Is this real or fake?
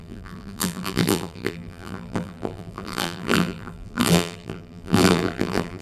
fake